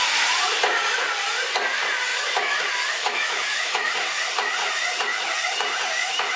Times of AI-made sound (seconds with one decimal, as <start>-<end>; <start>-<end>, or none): 2.1-2.6; 3.0-3.9